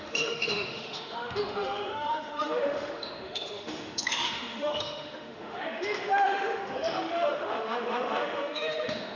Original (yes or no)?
no